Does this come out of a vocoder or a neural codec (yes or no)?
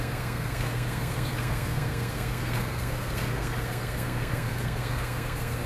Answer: yes